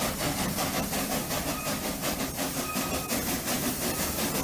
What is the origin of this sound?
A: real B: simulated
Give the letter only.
A